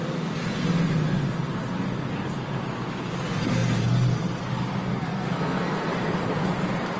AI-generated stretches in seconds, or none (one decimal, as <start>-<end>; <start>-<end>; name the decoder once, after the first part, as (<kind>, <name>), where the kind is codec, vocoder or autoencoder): 4.9-5.9 (codec, SNAC)